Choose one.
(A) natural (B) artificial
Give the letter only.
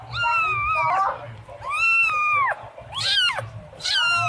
A